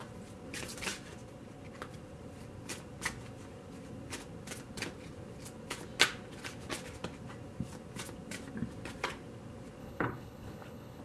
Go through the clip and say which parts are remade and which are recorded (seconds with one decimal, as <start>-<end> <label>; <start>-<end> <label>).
0.0-9.8 recorded; 9.8-11.0 remade